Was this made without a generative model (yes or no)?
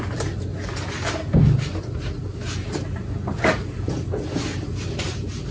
yes